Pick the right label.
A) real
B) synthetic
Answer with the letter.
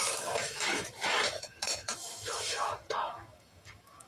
B